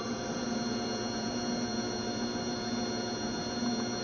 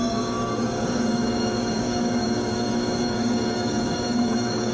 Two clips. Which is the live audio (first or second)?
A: first